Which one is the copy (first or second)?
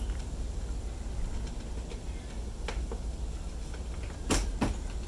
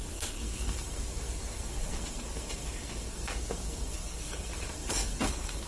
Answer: second